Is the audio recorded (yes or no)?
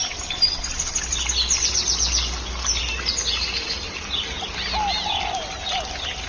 yes